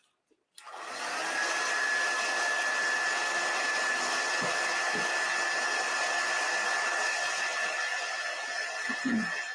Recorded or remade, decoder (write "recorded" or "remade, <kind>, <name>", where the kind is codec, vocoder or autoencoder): recorded